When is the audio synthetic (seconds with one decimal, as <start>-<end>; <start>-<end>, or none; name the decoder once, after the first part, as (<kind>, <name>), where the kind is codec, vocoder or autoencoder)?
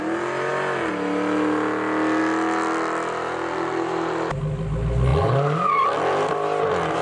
none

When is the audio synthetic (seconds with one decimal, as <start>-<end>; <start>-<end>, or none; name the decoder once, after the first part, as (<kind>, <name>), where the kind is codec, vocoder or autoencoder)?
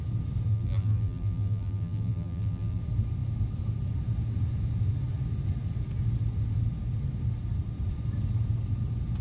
0.5-2.8 (vocoder, BigVGAN v2)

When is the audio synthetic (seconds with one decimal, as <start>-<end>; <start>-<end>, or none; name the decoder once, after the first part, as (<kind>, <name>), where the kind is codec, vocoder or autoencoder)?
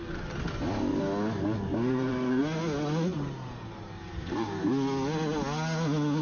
1.7-2.4 (vocoder, BigVGAN v2); 3.1-4.7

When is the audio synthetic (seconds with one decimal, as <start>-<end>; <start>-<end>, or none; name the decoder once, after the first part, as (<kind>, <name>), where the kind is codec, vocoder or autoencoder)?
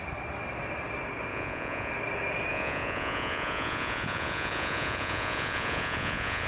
1.3-1.9 (vocoder, Vocos); 2.5-6.5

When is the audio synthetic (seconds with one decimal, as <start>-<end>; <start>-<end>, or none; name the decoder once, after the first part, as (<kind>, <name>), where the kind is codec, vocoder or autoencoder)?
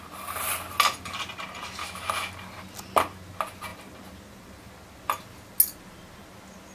1.8-2.3 (autoencoder, DAC-VAE)